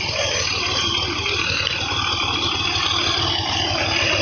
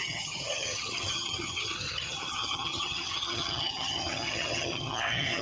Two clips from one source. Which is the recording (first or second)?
first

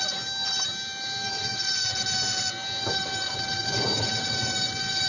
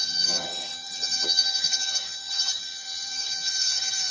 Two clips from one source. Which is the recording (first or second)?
first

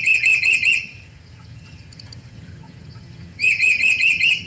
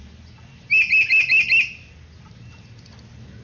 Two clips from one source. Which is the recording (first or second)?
second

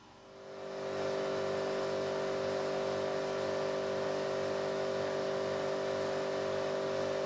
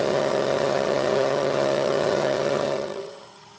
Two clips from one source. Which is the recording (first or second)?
first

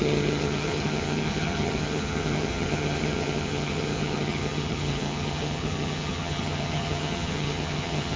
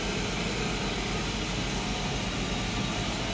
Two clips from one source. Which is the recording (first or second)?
second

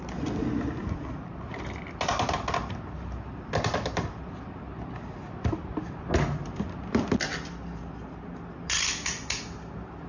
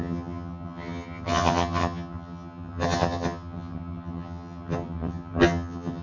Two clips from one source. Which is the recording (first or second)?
first